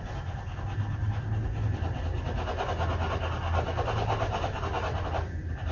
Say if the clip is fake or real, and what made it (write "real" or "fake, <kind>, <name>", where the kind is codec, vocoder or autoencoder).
real